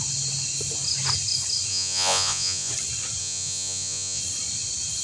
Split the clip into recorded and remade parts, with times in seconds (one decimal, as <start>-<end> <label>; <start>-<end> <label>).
0.0-1.7 recorded; 1.7-2.7 remade; 2.7-3.2 recorded; 3.2-4.2 remade; 4.2-5.0 recorded